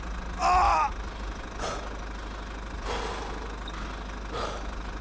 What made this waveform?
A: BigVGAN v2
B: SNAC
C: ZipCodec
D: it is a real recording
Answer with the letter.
D